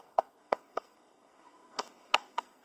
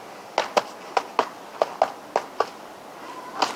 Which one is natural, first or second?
second